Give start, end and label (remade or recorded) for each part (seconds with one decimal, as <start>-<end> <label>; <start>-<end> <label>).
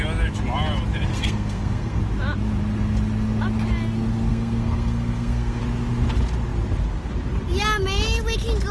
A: 0.0-1.1 recorded; 1.1-2.0 remade; 2.0-4.3 recorded; 4.3-5.6 remade; 5.6-8.7 recorded